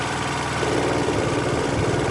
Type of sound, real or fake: real